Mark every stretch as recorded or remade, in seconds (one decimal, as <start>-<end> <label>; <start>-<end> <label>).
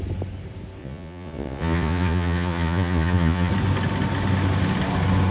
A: 0.0-0.8 recorded; 0.8-3.5 remade; 3.5-5.3 recorded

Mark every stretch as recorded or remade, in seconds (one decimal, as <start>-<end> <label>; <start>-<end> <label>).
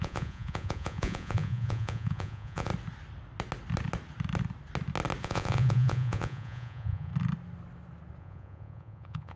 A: 0.0-2.7 remade; 2.7-5.2 recorded; 5.2-7.1 remade; 7.1-8.2 recorded; 8.2-9.4 remade